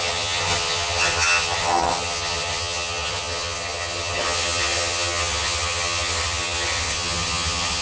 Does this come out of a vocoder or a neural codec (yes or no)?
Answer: yes